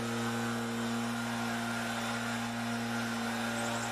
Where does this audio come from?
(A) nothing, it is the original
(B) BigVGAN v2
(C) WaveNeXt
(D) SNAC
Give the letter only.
A